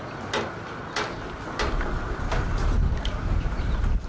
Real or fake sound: real